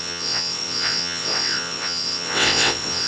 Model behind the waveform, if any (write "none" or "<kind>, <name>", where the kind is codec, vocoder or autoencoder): vocoder, WaveNeXt